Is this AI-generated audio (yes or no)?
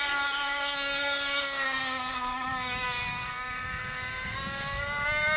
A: yes